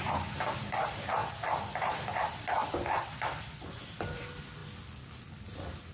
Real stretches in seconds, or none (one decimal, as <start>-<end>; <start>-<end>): 2.6-3.1; 4.6-5.9